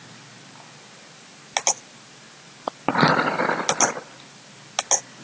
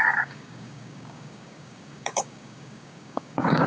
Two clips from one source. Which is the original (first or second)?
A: first